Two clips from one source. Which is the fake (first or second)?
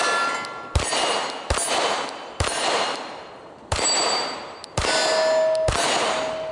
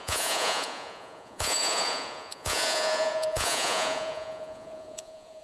second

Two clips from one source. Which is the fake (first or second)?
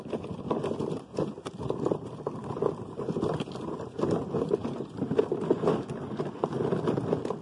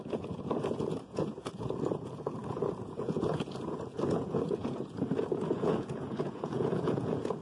second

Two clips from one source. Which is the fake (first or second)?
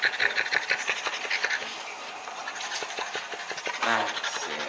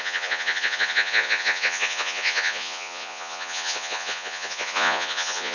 second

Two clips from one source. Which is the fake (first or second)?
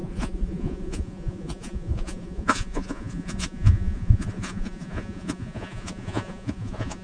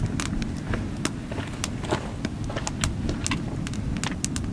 first